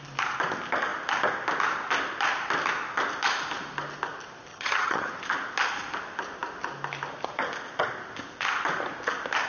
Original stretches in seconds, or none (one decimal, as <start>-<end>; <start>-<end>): 0.0-4.5; 5.1-9.5